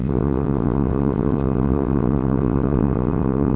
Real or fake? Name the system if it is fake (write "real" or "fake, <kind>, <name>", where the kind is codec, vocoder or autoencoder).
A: fake, vocoder, WaveNeXt